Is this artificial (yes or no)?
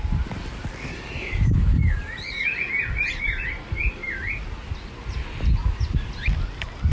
no